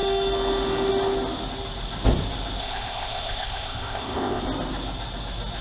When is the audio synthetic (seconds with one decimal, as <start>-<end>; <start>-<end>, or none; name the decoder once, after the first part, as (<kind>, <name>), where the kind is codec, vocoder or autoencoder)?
2.6-4.4 (codec, ZipCodec)